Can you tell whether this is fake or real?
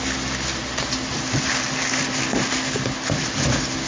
real